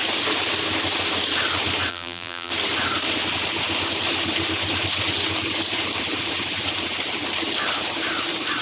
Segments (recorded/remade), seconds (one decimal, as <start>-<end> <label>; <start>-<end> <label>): 0.0-1.9 recorded; 1.9-2.5 remade; 2.5-8.6 recorded